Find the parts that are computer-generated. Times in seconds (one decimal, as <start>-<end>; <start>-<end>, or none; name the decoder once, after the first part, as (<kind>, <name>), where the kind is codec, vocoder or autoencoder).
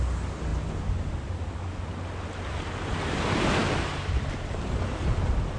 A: none